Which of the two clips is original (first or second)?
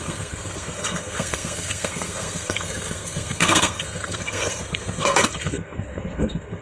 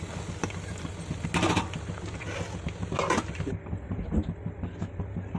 second